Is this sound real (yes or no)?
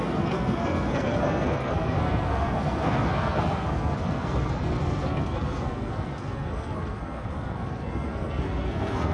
no